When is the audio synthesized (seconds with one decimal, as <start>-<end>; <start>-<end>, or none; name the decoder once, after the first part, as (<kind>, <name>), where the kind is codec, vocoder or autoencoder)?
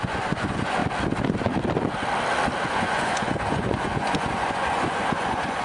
0.0-0.8 (vocoder, Vocos); 2.7-5.6